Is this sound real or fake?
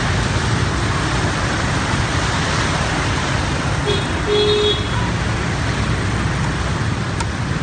real